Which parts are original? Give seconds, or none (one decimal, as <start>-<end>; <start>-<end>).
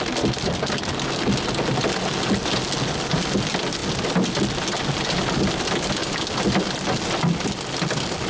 0.0-8.3